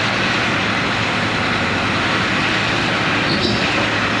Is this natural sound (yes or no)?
yes